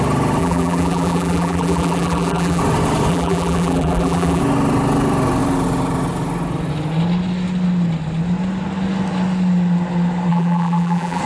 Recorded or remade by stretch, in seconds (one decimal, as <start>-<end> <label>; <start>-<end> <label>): 0.0-0.4 recorded; 0.4-2.6 remade; 2.6-3.1 recorded; 3.1-4.4 remade; 4.4-10.3 recorded; 10.3-11.2 remade